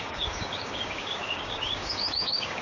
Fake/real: fake